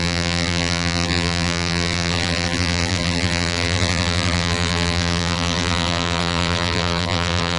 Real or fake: fake